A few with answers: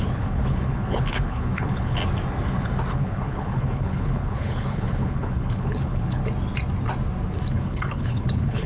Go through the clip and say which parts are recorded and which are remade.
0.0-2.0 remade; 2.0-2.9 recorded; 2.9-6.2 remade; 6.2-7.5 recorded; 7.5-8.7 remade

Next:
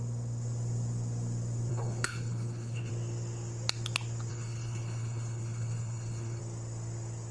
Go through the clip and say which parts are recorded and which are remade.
0.0-1.7 recorded; 1.7-2.9 remade; 2.9-4.3 recorded; 4.3-6.4 remade; 6.4-7.3 recorded

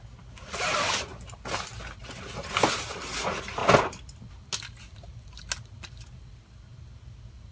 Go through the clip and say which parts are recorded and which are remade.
0.0-7.5 recorded

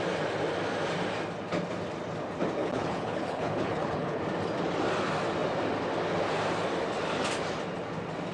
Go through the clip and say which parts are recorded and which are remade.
0.0-2.6 recorded; 2.6-4.2 remade; 4.2-8.3 recorded